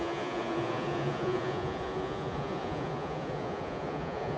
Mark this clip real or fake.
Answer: fake